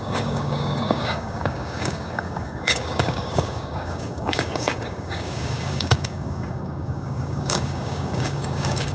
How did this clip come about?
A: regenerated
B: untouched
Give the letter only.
A